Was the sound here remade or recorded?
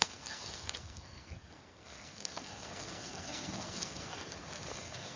remade